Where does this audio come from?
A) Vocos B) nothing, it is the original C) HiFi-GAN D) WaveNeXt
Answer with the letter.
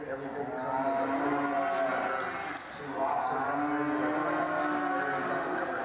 B